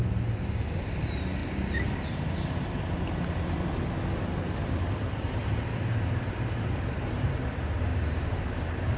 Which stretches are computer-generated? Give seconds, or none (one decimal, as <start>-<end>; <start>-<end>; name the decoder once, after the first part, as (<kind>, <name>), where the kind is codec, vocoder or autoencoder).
5.4-7.3 (vocoder, BigVGAN v2)